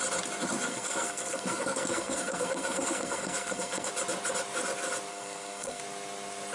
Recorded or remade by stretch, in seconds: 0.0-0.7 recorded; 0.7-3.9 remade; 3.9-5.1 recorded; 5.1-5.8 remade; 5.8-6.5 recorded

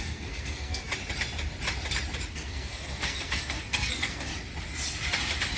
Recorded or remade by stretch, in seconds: 0.0-0.9 remade; 0.9-2.3 recorded; 2.3-4.3 remade; 4.3-5.6 recorded

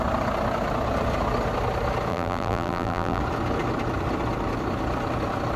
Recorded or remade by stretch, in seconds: 0.0-2.1 recorded; 2.1-3.2 remade; 3.2-5.6 recorded

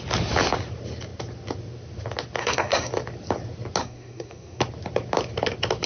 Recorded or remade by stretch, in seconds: 0.0-2.4 recorded; 2.4-2.9 remade; 2.9-3.8 recorded; 3.8-4.6 remade; 4.6-5.9 recorded

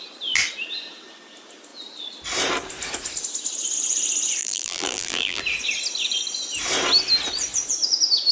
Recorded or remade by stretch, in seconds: 0.0-4.4 recorded; 4.4-5.4 remade; 5.4-8.3 recorded

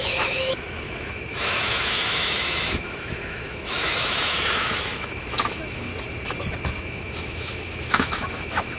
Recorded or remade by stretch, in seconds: 0.0-5.9 remade; 5.9-6.8 recorded; 6.8-8.8 remade

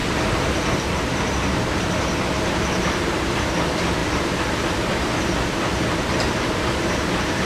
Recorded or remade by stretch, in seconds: 0.0-3.5 remade; 3.5-4.0 recorded; 4.0-5.1 remade; 5.1-5.7 recorded; 5.7-7.5 remade

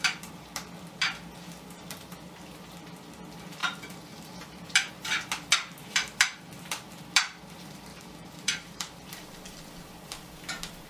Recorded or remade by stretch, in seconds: 0.0-7.9 recorded; 7.9-9.6 remade; 9.6-10.9 recorded